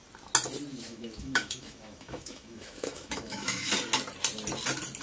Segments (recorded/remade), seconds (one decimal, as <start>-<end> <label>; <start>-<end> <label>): 0.0-0.7 recorded; 0.7-3.7 remade; 3.7-5.0 recorded